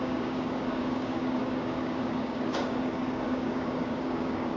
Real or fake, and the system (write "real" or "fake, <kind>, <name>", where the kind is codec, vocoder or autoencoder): fake, codec, DAC